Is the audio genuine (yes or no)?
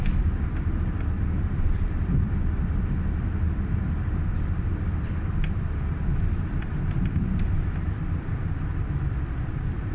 no